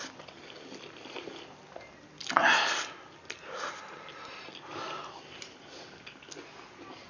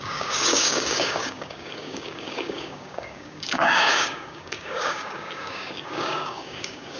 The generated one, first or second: second